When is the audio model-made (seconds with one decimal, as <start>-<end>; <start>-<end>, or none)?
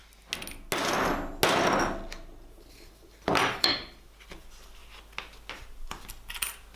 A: 2.7-4.8; 5.5-6.8